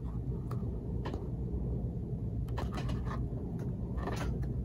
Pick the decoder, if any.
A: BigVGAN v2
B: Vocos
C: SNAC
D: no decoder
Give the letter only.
D